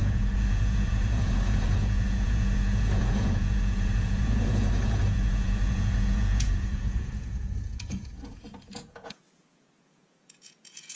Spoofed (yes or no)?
yes